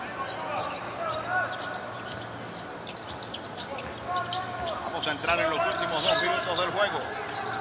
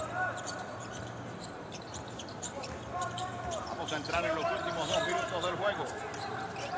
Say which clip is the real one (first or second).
first